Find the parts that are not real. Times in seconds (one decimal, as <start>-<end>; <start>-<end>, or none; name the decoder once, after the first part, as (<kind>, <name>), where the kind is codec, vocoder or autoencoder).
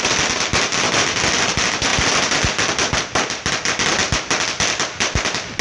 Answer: none